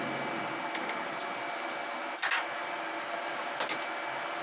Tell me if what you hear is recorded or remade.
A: recorded